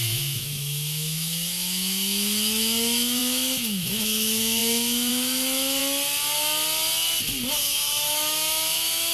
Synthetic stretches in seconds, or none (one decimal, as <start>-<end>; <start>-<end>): 0.0-5.8; 7.5-9.1